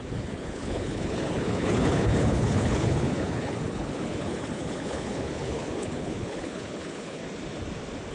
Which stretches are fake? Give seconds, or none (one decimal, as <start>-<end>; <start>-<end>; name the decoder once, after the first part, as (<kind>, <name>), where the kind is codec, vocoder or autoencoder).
0.0-7.2 (codec, HILCodec)